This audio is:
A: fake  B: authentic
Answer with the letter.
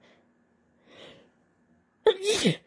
B